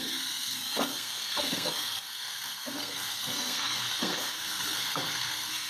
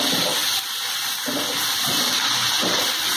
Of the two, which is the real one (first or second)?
second